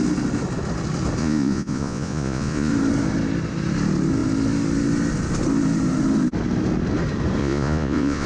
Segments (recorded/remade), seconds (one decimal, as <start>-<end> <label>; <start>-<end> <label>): 0.0-1.2 recorded; 1.2-2.7 remade; 2.7-7.4 recorded; 7.4-8.3 remade